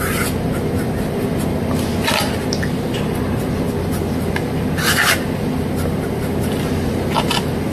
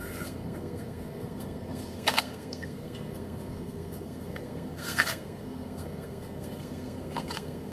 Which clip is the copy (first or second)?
second